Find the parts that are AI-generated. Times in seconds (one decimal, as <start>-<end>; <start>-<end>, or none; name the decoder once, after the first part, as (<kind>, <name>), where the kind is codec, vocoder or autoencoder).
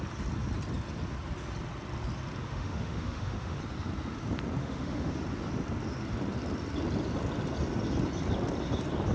2.4-3.6 (autoencoder, DAC-VAE); 4.6-5.1